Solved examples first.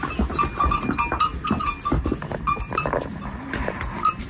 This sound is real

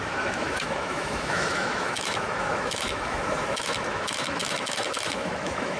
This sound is fake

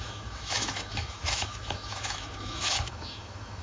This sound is fake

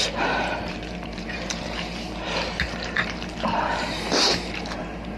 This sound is fake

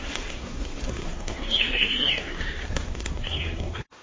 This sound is fake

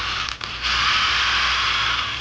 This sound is real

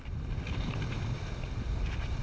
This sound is real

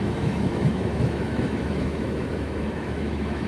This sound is fake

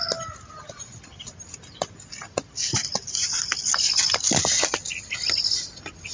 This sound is real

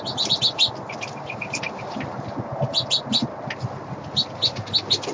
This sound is real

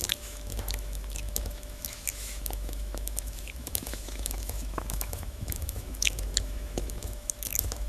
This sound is fake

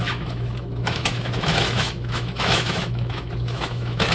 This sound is fake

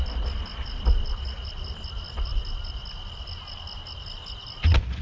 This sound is real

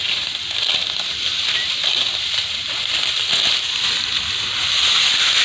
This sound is real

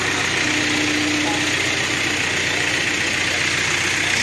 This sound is real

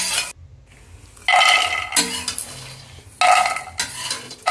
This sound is real